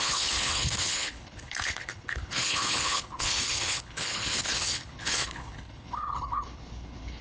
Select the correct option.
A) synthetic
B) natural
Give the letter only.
A